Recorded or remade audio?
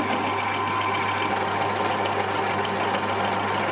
recorded